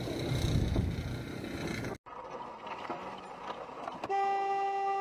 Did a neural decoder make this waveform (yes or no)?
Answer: no